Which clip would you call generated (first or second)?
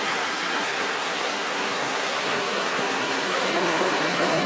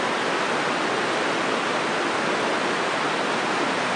first